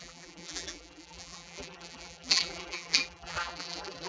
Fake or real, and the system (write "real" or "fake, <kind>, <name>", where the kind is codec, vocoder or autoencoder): fake, vocoder, BigVGAN v2